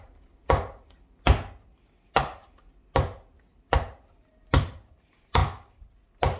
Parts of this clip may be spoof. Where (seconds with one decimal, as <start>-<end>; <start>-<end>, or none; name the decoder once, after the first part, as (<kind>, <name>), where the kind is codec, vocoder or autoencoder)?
none